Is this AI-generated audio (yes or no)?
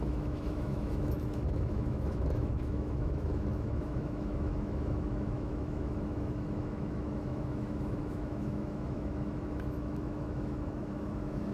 yes